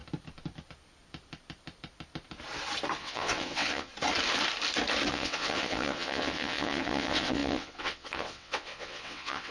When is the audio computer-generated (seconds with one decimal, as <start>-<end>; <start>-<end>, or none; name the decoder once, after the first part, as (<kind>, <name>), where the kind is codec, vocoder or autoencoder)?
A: 3.0-3.9 (vocoder, WaveNeXt); 5.1-9.5